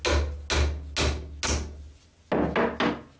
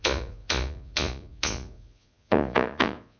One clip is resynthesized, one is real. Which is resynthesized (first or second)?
second